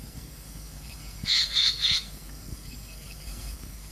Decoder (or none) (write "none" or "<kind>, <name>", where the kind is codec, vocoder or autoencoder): codec, SNAC